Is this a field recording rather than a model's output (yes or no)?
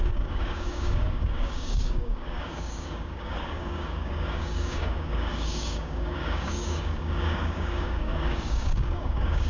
no